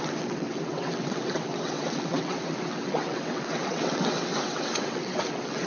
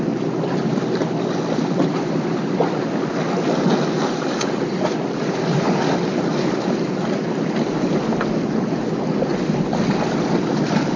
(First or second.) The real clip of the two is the second